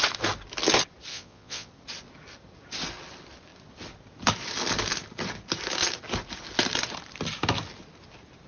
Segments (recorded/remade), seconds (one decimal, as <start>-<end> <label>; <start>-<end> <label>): 0.0-1.1 recorded; 1.1-1.7 remade; 1.7-8.5 recorded